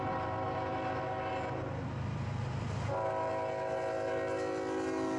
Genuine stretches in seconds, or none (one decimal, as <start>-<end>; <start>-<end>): 0.0-5.2

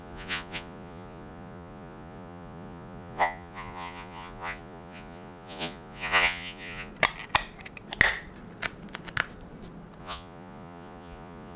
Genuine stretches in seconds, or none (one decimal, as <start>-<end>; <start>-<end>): 6.9-10.0

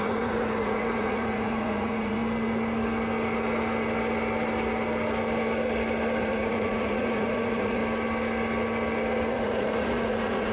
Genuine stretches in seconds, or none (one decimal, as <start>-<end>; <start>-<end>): 2.2-6.2; 7.8-9.3

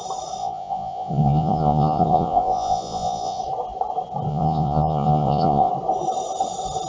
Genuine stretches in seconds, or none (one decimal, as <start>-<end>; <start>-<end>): 0.0-0.4; 3.4-4.3; 5.7-6.9

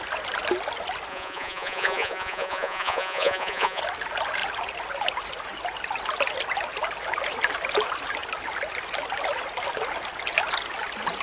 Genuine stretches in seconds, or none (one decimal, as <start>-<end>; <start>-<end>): 0.0-1.1; 3.8-11.2